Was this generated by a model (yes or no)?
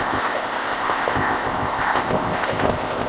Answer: yes